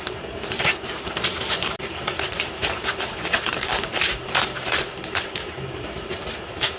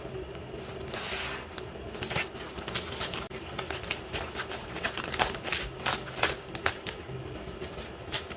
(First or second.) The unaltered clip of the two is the second